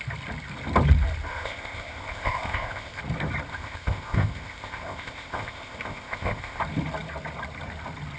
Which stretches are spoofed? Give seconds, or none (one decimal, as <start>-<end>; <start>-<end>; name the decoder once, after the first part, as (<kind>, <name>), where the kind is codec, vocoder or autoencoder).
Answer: 1.3-3.0 (codec, ZipCodec); 3.5-6.6